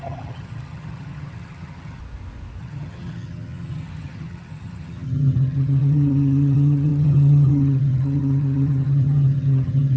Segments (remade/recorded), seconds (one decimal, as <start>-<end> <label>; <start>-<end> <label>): 0.0-2.0 remade; 2.0-2.6 recorded; 2.6-10.0 remade